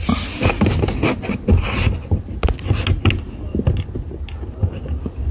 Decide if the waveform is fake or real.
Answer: real